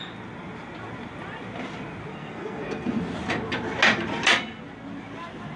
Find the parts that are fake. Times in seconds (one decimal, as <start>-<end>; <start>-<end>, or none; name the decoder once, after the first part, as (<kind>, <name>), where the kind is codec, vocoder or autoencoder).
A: 2.1-3.0 (codec, SNAC)